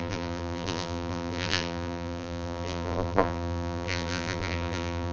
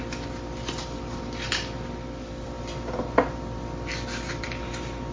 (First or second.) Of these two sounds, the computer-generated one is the first